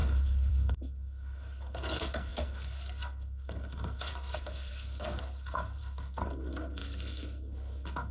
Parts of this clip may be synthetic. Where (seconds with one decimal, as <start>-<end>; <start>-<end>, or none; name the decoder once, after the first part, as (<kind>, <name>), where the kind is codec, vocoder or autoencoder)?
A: 0.0-8.1 (codec, SNAC)